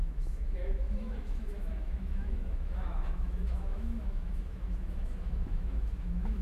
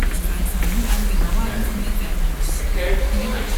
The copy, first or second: first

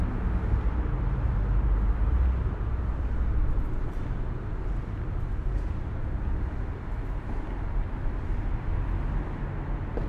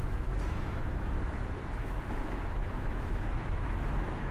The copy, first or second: second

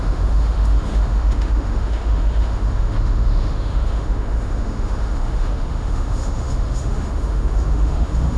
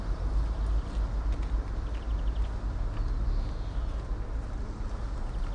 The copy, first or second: first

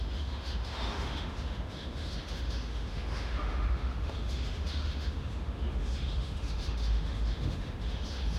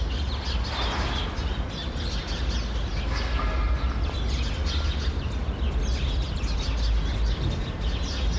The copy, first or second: first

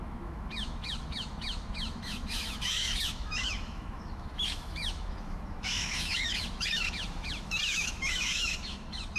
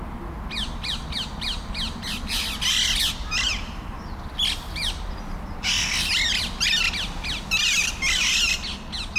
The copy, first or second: first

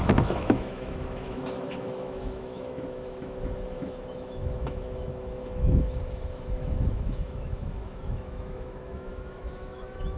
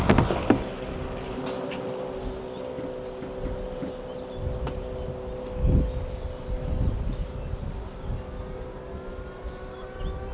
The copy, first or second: first